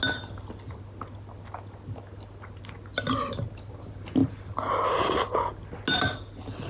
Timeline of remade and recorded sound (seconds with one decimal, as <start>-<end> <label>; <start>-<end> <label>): 0.0-6.7 recorded